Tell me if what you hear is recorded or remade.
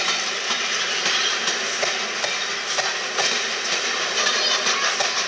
recorded